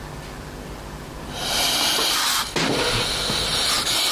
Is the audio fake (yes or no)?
no